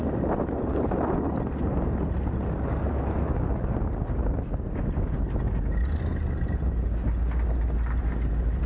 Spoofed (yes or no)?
no